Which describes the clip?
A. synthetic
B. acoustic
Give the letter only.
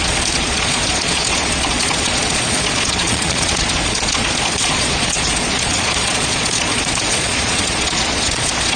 A